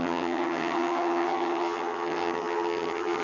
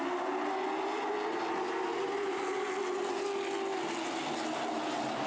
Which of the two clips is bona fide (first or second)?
second